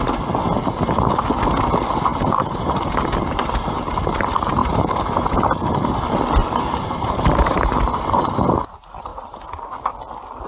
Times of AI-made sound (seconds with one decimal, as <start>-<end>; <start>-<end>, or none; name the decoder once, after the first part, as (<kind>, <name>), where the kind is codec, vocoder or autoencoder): 2.1-2.6 (vocoder, BigVGAN v2); 4.6-5.4; 6.4-8.3